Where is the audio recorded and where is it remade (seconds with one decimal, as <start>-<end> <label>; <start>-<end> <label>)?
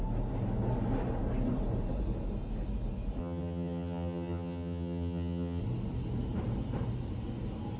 0.0-3.2 recorded; 3.2-5.6 remade; 5.6-7.8 recorded